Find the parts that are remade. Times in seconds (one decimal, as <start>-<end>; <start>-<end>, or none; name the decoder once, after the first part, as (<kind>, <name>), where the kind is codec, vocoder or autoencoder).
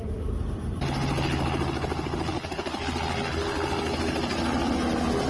none